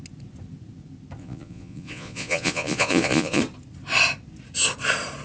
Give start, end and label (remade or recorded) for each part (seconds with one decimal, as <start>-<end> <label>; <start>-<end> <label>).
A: 0.0-1.2 recorded; 1.2-3.4 remade; 3.4-5.2 recorded